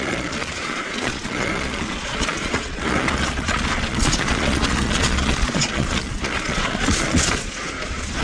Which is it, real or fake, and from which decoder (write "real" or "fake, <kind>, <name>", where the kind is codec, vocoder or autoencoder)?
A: fake, vocoder, Vocos